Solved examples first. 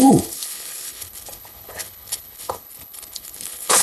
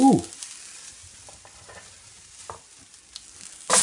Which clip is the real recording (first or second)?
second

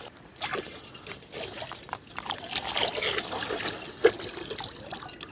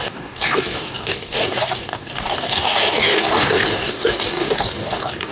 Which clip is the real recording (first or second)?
first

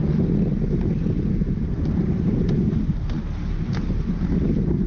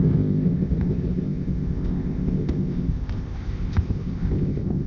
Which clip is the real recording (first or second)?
first